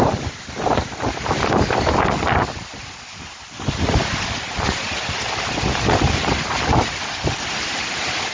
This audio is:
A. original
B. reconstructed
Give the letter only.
A